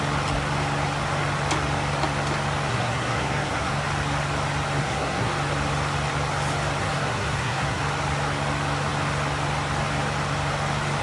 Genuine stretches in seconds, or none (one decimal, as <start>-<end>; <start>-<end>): 0.0-2.7; 3.7-4.8; 5.3-6.8; 7.8-11.0